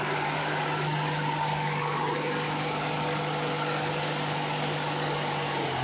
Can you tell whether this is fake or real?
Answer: fake